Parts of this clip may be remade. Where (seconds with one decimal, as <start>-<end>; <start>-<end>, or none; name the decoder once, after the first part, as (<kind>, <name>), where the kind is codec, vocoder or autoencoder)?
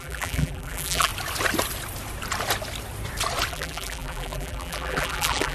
0.0-1.1 (vocoder, BigVGAN v2); 3.5-5.5